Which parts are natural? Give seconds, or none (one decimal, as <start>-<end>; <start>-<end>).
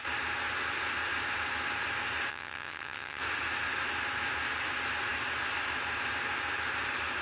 0.0-2.3; 3.2-7.2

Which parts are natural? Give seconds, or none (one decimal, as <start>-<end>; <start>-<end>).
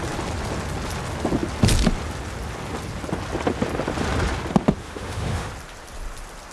0.0-4.8; 5.5-6.5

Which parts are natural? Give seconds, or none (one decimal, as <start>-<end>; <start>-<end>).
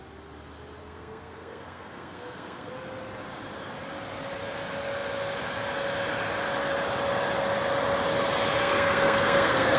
0.0-0.8; 2.7-8.6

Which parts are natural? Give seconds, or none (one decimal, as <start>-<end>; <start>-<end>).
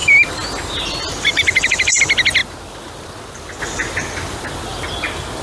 0.0-5.4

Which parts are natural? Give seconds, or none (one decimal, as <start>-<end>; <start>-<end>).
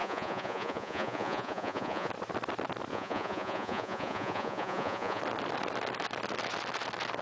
2.1-2.9; 5.2-7.2